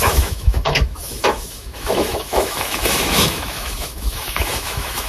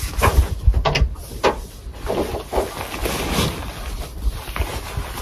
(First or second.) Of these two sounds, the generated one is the first